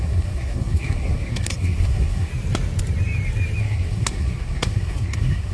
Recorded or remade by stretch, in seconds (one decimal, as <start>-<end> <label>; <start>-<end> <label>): 0.0-2.3 remade; 2.3-3.6 recorded; 3.6-5.5 remade